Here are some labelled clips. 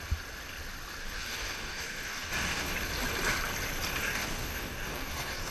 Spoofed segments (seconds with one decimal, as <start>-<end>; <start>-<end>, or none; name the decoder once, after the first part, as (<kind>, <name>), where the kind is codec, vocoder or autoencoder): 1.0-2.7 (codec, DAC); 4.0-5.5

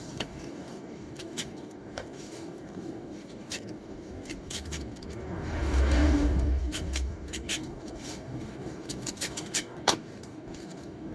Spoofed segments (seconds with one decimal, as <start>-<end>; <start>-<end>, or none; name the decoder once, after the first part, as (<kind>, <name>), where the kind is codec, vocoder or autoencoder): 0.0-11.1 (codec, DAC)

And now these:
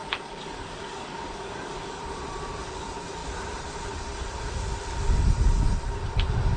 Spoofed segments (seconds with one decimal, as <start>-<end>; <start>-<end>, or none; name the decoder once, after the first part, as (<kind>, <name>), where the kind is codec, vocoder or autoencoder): 0.0-2.0 (codec, DAC)